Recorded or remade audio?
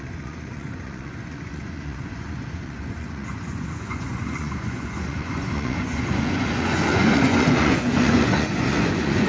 remade